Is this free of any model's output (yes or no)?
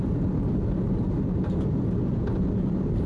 yes